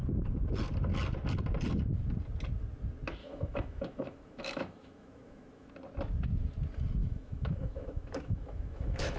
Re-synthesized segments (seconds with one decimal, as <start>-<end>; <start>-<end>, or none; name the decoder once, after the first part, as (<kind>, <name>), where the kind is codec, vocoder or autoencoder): 3.2-5.7 (autoencoder, DAC-VAE); 7.0-9.2